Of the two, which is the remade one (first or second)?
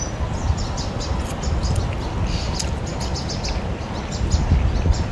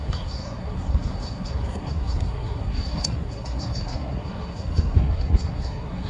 second